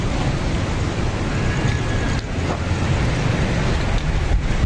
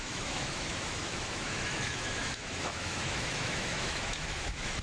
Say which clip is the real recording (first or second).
first